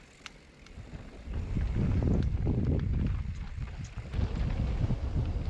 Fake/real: real